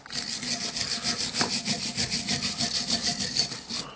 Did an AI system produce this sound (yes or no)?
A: no